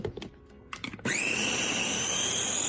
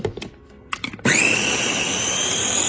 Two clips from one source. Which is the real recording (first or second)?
first